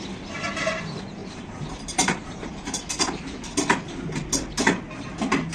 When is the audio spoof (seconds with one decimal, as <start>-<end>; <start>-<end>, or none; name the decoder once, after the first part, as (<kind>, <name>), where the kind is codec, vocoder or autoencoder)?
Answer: 1.2-2.9 (vocoder, BigVGAN v2)